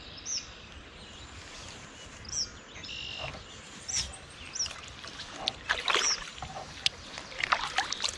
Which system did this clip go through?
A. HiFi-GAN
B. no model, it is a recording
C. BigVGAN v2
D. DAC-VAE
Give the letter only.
B